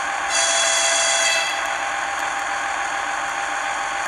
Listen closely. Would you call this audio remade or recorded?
recorded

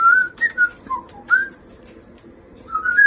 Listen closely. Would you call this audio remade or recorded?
recorded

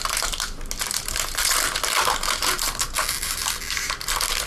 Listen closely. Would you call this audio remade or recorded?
recorded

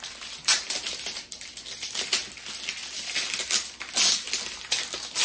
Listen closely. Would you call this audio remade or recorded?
recorded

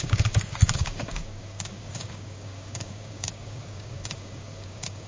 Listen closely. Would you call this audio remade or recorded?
remade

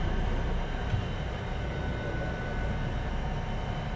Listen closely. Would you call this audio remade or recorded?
recorded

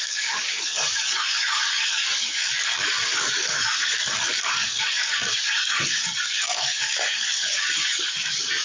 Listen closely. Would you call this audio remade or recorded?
remade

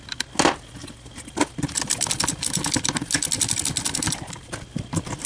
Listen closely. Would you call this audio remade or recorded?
recorded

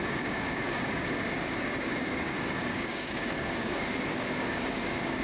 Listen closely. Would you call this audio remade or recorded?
remade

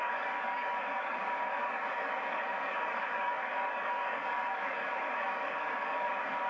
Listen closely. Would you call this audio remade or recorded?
remade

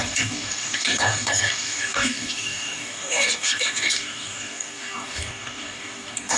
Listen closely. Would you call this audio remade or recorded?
remade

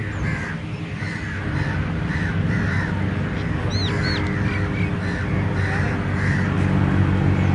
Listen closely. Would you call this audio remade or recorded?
recorded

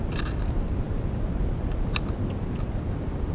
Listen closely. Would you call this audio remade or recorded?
recorded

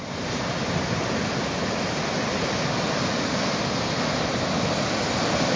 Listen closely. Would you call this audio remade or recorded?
recorded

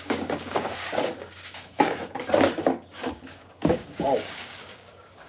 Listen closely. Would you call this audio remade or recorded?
remade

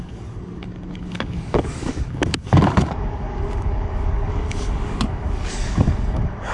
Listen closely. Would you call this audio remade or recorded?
remade